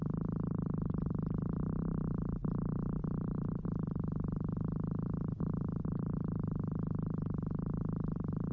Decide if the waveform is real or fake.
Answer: real